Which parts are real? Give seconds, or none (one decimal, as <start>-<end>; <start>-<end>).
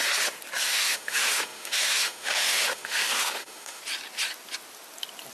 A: 0.0-0.6; 3.8-5.3